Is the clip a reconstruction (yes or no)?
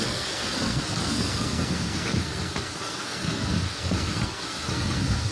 yes